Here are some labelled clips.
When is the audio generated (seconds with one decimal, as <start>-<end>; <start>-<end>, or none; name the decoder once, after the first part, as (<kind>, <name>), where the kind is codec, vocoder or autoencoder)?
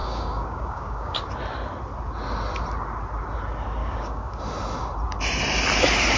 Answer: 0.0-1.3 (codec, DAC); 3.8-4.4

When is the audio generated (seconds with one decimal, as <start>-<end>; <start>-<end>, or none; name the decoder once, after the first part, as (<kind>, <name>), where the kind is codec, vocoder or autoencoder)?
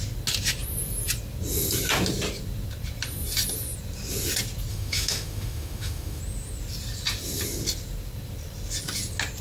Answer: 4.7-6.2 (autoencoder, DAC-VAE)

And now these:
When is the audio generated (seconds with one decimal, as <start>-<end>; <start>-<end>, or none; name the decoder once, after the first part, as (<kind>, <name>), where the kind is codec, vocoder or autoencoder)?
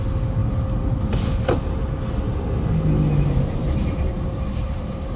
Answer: 3.6-5.2 (vocoder, BigVGAN v2)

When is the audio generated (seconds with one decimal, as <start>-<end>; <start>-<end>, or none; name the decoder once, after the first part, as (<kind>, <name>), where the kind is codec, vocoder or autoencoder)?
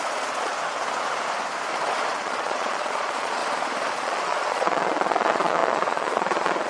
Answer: 0.0-0.5 (vocoder, Vocos); 2.1-3.4; 3.9-6.7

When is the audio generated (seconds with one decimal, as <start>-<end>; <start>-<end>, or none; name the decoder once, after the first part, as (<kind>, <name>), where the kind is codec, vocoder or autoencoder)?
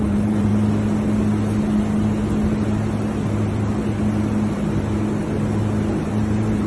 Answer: 0.0-0.5 (vocoder, BigVGAN v2); 4.5-4.9; 6.1-6.7